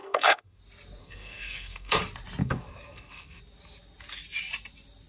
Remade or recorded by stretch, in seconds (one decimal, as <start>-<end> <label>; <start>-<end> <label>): 0.0-0.6 remade; 0.6-1.0 recorded; 1.0-2.0 remade; 2.0-2.4 recorded; 2.4-3.4 remade; 3.4-5.1 recorded